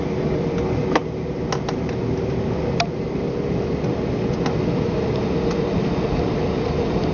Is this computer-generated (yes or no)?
no